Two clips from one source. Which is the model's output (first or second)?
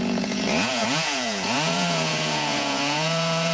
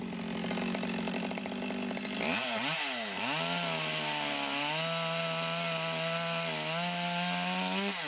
first